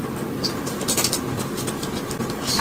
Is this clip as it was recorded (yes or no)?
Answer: yes